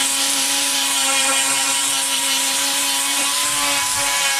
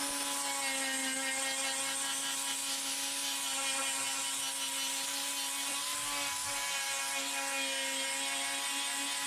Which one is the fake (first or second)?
first